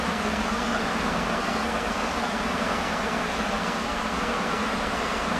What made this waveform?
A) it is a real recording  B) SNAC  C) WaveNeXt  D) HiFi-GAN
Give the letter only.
B